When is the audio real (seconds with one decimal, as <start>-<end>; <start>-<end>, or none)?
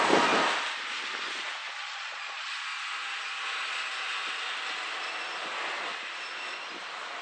0.0-1.8; 2.5-7.2